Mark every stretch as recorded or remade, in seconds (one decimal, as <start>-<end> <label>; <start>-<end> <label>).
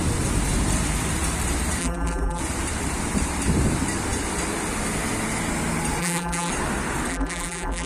0.0-1.8 recorded; 1.8-2.4 remade; 2.4-6.0 recorded; 6.0-6.5 remade; 6.5-7.1 recorded; 7.1-7.9 remade